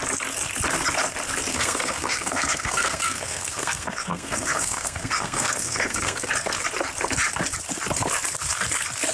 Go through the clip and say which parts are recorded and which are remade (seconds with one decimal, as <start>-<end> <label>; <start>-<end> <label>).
0.0-1.5 recorded; 1.5-6.3 remade; 6.3-9.1 recorded